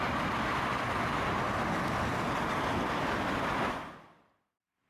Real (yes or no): yes